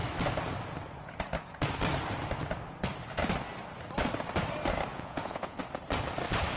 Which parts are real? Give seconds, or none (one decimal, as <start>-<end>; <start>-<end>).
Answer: 0.0-4.9; 5.6-6.6